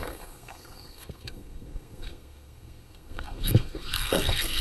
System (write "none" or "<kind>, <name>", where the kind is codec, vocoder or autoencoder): codec, SNAC